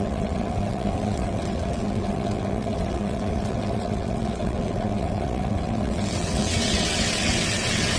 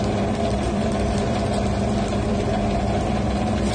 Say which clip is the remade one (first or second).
first